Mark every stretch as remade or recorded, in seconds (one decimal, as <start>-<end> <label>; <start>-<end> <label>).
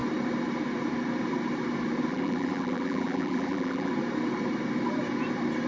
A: 0.0-2.1 recorded; 2.1-3.9 remade; 3.9-5.7 recorded